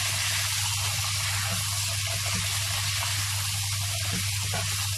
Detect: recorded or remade recorded